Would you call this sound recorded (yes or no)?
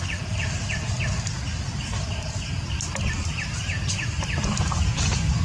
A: yes